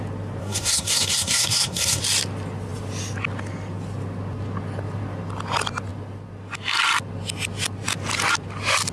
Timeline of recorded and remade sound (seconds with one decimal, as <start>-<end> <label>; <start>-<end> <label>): 0.0-0.4 recorded; 0.4-2.0 remade; 2.0-8.9 recorded